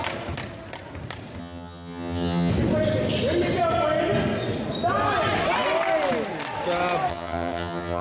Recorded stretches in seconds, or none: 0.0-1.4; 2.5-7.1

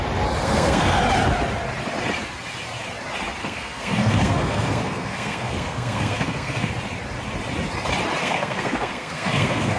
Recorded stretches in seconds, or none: 0.0-0.4; 1.0-3.4; 6.7-8.2

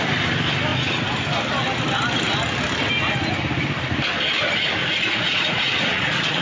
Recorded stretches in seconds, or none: 0.0-4.8

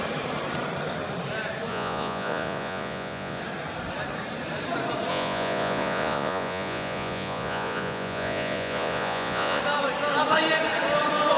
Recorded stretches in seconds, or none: 0.0-1.7; 3.4-5.1; 9.6-11.4